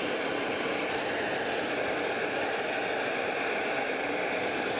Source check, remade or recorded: recorded